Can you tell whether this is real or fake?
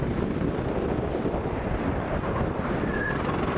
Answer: real